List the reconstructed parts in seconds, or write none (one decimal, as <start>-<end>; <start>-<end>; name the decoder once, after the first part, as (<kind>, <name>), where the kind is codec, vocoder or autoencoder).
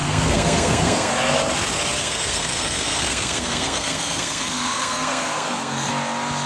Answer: 0.0-1.1 (codec, SNAC); 2.0-5.9